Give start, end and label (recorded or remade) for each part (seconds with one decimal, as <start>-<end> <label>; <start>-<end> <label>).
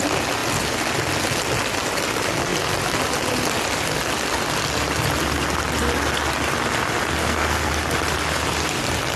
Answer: 0.0-7.2 recorded; 7.2-7.7 remade; 7.7-9.2 recorded